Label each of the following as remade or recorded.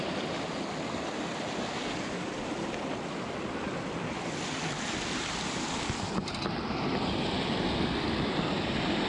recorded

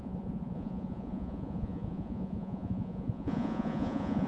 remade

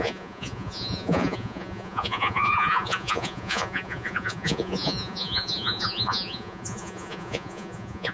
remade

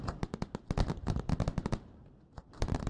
recorded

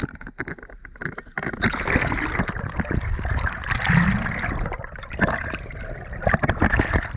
recorded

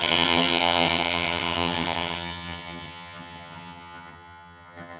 remade